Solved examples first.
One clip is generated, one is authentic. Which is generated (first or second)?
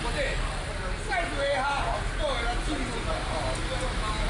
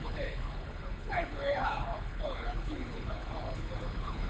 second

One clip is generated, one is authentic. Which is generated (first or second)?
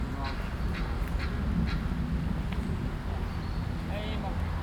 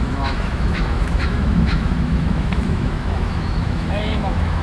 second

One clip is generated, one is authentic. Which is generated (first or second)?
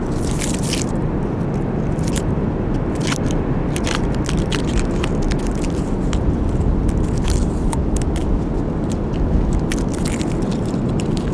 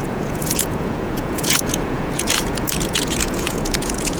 second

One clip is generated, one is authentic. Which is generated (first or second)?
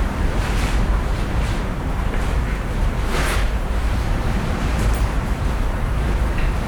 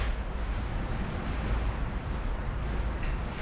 first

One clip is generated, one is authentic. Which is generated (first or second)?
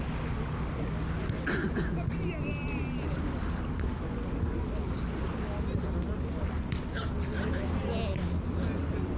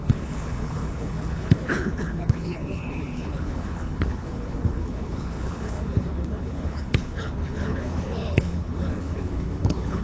second